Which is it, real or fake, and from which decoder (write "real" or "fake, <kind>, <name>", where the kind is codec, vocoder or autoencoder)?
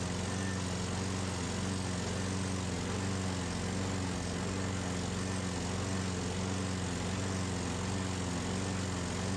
real